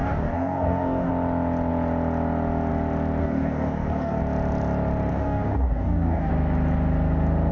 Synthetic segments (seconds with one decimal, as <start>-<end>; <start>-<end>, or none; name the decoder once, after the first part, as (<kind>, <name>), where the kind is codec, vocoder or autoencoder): 0.0-1.1 (codec, DAC); 3.2-4.2; 5.1-6.3